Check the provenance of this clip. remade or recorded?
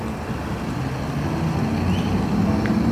recorded